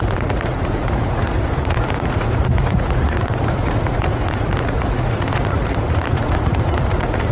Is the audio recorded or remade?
remade